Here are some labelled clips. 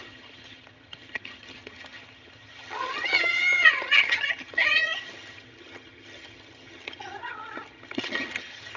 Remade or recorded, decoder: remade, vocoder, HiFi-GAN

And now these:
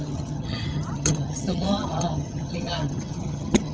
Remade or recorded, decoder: remade, vocoder, HiFi-GAN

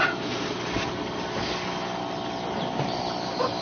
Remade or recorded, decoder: recorded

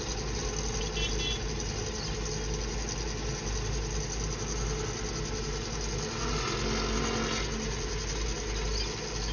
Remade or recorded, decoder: recorded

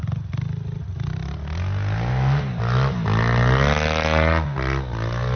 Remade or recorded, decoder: recorded